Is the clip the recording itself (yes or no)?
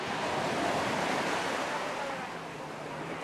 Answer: yes